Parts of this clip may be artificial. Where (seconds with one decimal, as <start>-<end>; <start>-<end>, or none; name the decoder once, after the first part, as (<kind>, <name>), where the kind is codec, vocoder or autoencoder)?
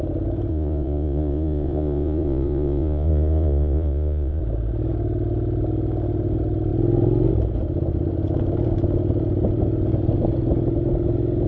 0.5-4.4 (vocoder, Vocos)